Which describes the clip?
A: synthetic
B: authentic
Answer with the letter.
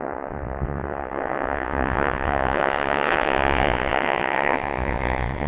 A